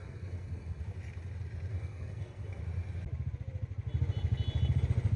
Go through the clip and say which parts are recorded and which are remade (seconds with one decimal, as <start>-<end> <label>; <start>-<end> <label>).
0.0-0.8 remade; 0.8-1.7 recorded; 1.7-2.6 remade; 2.6-5.2 recorded